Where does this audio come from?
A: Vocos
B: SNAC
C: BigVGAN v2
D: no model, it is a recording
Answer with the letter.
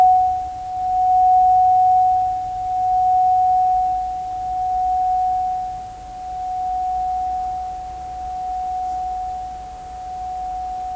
D